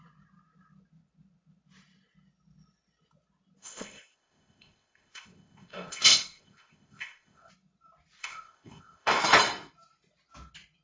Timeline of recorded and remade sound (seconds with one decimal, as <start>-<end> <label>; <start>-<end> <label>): 0.0-3.6 recorded; 3.6-7.5 remade; 7.5-8.2 recorded; 8.2-9.2 remade; 9.2-10.8 recorded